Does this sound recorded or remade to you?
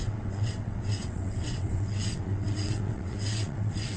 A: remade